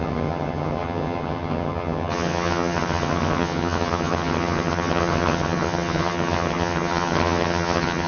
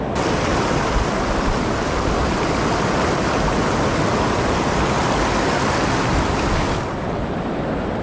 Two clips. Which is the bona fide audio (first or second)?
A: second